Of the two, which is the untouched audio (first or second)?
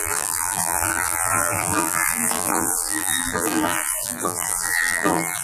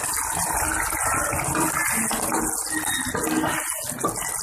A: second